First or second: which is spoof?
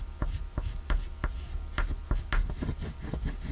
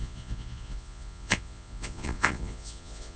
second